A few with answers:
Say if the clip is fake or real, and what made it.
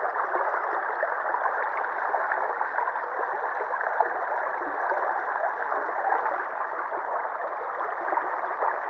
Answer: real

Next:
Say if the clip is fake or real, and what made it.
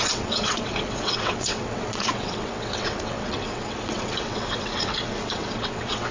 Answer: fake, vocoder, WaveNeXt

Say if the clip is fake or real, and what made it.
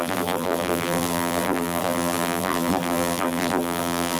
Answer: fake, vocoder, BigVGAN v2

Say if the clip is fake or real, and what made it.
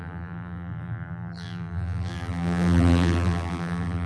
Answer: fake, vocoder, BigVGAN v2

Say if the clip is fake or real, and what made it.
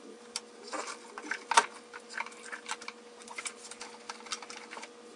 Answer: real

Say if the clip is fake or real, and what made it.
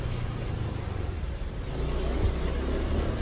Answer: real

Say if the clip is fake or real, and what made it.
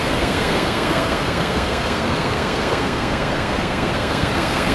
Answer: fake, codec, SNAC